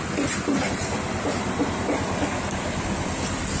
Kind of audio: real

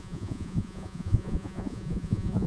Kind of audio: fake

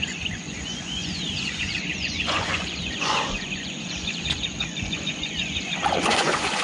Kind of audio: fake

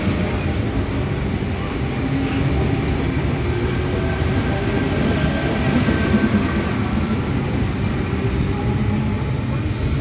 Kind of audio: real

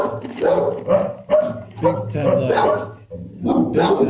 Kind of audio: real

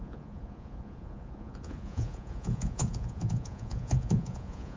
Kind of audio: fake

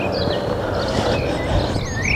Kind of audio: real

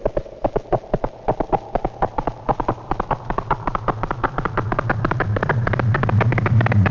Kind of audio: real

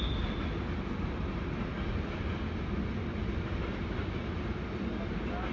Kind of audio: real